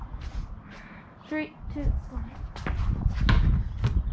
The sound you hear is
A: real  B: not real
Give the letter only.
A